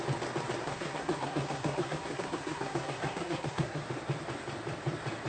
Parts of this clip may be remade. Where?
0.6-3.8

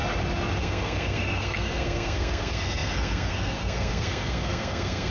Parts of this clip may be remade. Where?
0.6-5.1

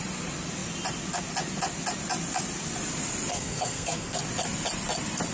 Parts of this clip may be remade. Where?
3.3-4.2

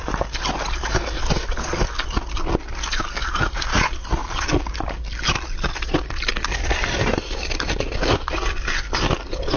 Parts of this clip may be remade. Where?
none